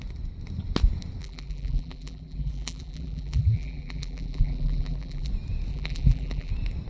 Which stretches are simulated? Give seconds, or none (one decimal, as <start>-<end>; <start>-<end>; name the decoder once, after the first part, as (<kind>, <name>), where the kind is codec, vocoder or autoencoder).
1.2-5.3 (vocoder, BigVGAN v2); 5.7-6.5